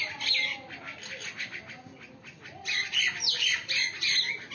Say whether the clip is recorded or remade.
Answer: recorded